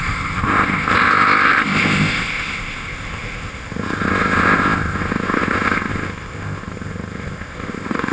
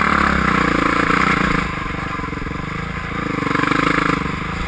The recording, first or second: second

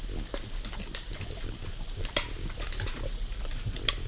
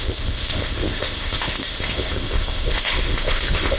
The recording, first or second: first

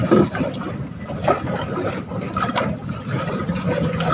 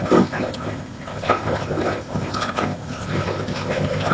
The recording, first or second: first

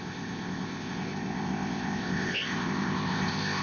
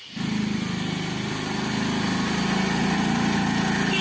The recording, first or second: second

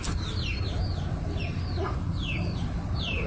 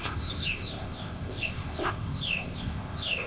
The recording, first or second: first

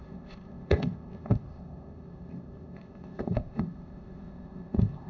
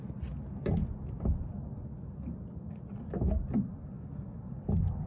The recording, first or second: second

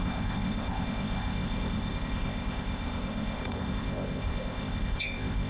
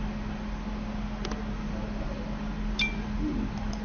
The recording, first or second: second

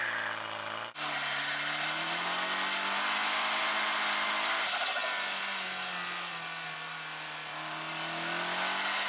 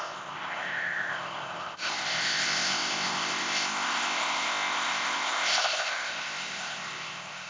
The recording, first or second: first